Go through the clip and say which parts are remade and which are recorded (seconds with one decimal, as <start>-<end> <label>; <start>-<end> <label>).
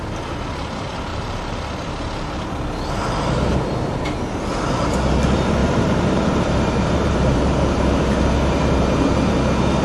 0.0-1.1 recorded; 1.1-2.5 remade; 2.5-5.6 recorded; 5.6-9.4 remade; 9.4-9.8 recorded